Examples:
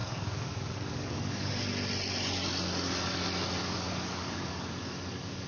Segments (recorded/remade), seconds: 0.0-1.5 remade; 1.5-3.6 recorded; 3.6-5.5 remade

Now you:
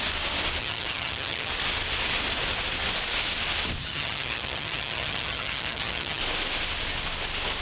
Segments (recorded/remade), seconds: 0.0-0.6 recorded; 0.6-1.5 remade; 1.5-3.8 recorded; 3.8-6.2 remade; 6.2-7.6 recorded

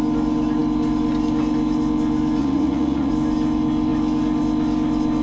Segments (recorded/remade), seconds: 0.0-2.4 recorded; 2.4-3.1 remade; 3.1-5.2 recorded

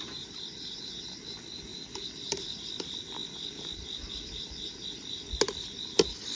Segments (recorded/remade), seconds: 0.0-6.4 recorded